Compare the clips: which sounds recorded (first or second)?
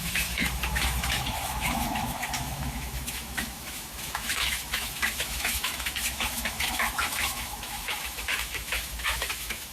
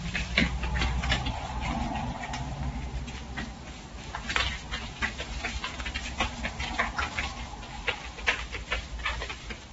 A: second